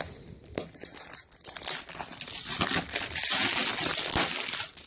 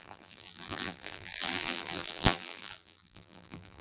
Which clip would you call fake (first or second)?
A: second